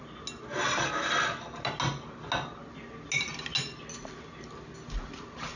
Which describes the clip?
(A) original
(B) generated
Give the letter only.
A